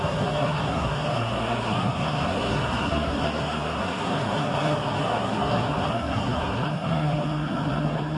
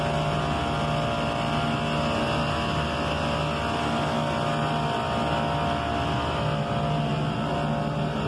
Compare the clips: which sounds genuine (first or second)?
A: second